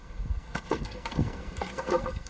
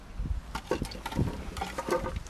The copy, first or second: first